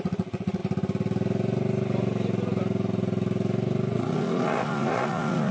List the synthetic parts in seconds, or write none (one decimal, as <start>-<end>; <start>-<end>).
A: 0.0-0.6; 3.9-5.5